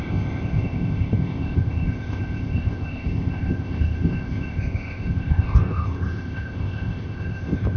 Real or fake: fake